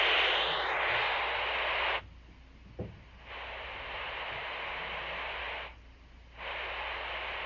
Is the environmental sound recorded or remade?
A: recorded